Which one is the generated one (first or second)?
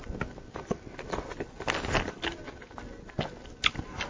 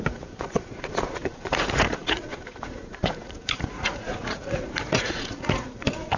second